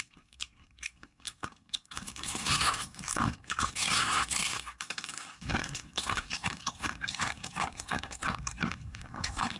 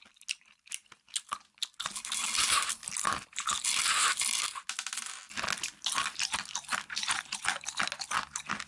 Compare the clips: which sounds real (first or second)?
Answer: second